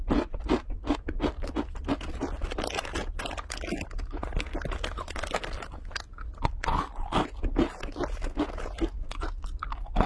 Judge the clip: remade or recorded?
recorded